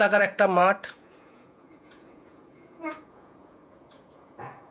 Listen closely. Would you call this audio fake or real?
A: fake